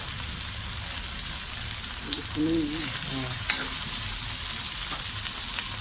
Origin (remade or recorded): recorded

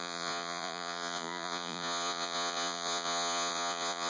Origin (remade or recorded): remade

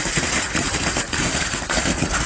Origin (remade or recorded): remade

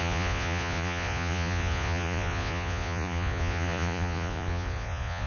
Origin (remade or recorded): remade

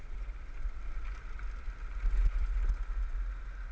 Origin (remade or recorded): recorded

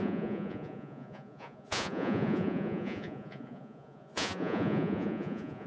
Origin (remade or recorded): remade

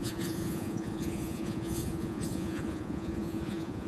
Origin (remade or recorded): remade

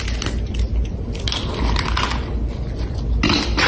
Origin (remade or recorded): recorded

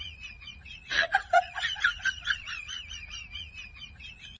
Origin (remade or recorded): remade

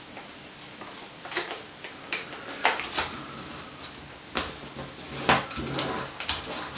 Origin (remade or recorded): recorded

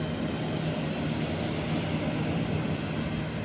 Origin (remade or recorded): recorded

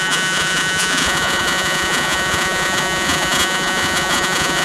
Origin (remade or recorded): remade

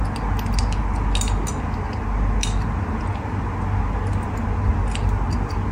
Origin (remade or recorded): recorded